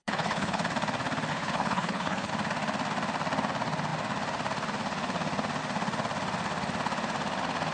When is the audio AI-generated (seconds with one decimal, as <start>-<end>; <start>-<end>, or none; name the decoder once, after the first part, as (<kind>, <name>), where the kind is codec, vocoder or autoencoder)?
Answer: 0.0-0.6 (codec, HILCodec); 1.3-2.3